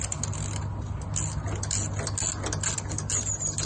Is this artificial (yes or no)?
no